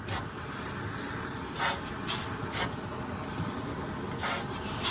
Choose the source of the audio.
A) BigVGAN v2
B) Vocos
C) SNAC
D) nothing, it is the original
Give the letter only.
D